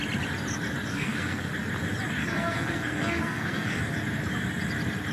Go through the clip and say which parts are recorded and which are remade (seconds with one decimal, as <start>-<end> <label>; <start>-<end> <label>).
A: 0.0-0.9 recorded; 0.9-1.5 remade; 1.5-2.2 recorded; 2.2-3.8 remade; 3.8-5.1 recorded